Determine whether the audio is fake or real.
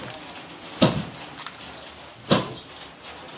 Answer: real